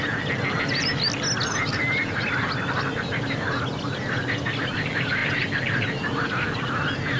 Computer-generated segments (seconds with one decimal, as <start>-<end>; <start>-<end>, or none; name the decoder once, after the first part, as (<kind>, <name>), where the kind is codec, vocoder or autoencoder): none